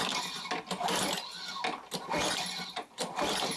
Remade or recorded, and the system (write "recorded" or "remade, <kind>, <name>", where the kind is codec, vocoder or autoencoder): recorded